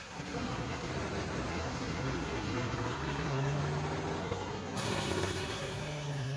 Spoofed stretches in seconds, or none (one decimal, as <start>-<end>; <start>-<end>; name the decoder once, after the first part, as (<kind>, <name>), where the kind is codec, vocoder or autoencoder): 0.0-0.9 (codec, SNAC); 1.5-3.6; 4.2-6.4